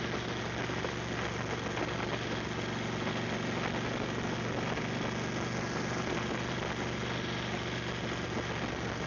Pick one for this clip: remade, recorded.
recorded